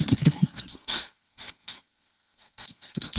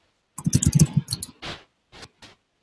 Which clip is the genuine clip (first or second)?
second